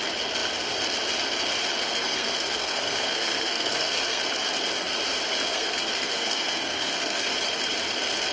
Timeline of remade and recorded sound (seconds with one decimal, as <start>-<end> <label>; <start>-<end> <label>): 0.0-1.8 recorded; 1.8-4.2 remade; 4.2-5.5 recorded; 5.5-7.3 remade; 7.3-8.3 recorded